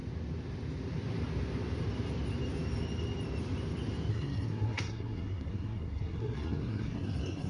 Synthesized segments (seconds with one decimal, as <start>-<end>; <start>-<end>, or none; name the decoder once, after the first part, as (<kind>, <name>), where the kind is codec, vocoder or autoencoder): 4.1-7.5 (codec, SNAC)